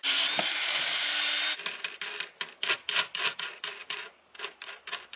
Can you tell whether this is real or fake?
fake